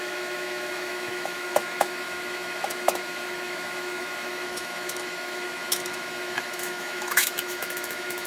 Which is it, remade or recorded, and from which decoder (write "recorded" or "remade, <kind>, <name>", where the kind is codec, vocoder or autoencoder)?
remade, autoencoder, DAC-VAE